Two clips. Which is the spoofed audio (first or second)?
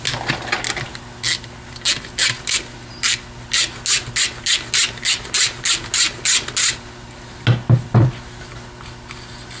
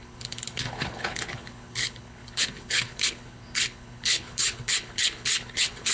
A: second